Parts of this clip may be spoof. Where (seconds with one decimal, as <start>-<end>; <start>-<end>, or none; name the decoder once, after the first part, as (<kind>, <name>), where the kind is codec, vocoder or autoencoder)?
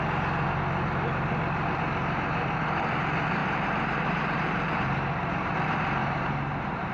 3.4-5.5 (vocoder, BigVGAN v2); 6.0-6.9